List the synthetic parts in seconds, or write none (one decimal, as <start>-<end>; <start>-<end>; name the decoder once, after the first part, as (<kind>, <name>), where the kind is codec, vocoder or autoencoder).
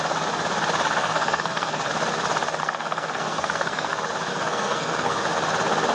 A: 1.0-1.9 (codec, SNAC); 2.6-3.9; 4.3-5.2